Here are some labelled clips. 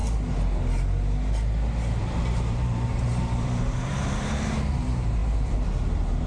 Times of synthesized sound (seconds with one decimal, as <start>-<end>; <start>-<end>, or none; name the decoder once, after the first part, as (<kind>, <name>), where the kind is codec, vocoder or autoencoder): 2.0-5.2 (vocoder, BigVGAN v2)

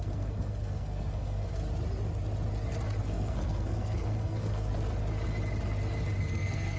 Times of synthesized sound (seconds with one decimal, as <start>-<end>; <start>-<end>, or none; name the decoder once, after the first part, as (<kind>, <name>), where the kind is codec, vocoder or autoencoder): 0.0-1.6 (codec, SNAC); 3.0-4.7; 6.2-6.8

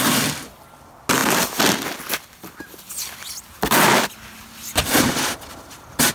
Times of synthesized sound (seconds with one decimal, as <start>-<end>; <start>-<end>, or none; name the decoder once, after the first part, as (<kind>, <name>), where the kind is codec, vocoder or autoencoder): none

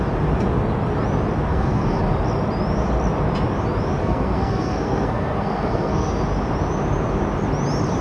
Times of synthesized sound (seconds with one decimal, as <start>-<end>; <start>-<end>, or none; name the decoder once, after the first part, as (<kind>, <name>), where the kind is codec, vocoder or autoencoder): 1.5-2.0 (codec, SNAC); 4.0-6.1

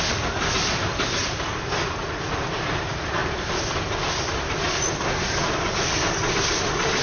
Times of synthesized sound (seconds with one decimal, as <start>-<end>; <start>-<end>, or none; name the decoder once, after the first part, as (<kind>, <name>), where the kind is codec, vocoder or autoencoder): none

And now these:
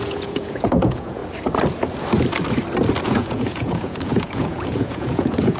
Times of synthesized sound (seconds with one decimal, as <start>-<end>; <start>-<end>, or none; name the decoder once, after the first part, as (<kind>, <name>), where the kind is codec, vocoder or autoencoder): 0.0-1.2 (vocoder, Vocos); 3.0-5.6

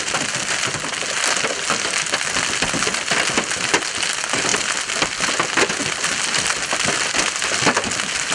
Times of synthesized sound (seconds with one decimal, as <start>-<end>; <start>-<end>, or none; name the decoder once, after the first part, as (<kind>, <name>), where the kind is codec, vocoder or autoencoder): none